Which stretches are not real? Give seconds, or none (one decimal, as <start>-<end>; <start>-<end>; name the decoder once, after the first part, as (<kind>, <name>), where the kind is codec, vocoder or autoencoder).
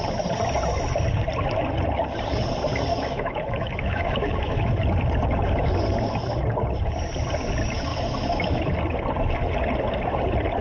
2.9-4.7 (autoencoder, DAC-VAE); 7.9-8.6